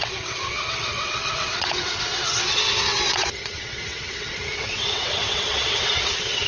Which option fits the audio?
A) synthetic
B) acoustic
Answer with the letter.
A